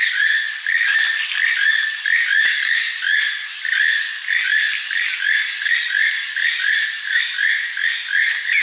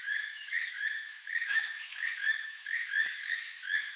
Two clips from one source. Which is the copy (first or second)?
second